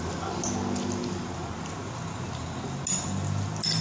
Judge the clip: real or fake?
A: real